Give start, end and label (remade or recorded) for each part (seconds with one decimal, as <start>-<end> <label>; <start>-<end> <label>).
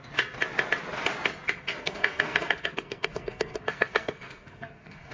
0.0-1.8 recorded; 1.8-5.1 remade